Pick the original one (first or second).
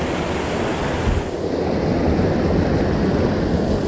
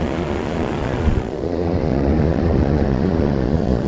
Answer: first